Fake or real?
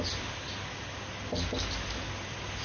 real